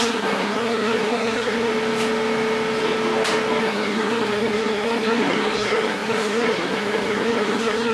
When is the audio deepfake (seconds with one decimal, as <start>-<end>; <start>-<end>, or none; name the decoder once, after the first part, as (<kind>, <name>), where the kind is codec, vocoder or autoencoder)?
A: 0.0-1.7 (codec, SNAC); 3.6-7.9